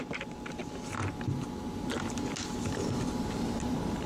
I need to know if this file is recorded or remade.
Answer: recorded